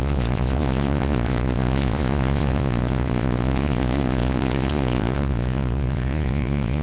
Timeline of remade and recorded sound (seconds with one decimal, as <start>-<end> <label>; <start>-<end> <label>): 0.0-6.8 remade